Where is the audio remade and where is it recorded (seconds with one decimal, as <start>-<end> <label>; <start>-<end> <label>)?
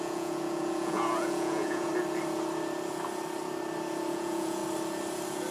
0.0-1.9 remade; 1.9-4.1 recorded; 4.1-4.6 remade; 4.6-5.5 recorded